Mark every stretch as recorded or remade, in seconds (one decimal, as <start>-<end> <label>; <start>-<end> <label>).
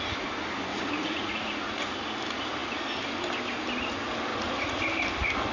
0.0-0.7 recorded; 0.7-1.9 remade; 1.9-4.3 recorded; 4.3-4.8 remade; 4.8-5.5 recorded